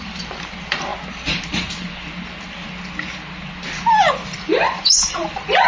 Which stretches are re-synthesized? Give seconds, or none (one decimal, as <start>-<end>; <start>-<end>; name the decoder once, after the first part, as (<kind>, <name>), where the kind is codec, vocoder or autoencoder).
0.0-0.9 (vocoder, BigVGAN v2); 4.1-5.7

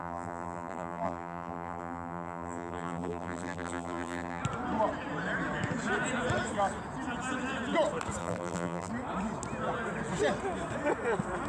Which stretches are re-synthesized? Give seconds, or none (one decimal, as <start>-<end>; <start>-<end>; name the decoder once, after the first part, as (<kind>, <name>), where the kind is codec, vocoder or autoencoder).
0.0-4.4 (vocoder, BigVGAN v2); 8.2-8.9

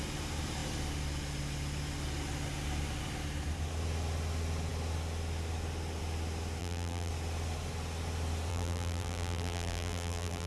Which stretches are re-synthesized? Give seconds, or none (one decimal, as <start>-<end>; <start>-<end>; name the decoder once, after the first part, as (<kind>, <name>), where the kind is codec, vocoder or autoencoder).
6.6-7.1 (vocoder, BigVGAN v2); 8.5-10.5

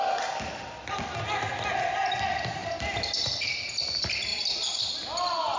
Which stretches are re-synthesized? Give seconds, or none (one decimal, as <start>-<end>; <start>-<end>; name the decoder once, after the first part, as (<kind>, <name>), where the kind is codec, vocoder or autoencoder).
2.6-3.5 (vocoder, BigVGAN v2); 4.3-4.9